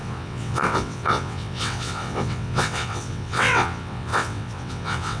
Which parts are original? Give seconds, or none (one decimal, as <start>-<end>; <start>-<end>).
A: none